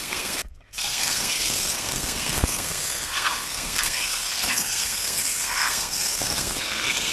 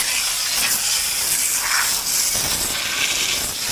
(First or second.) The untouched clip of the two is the second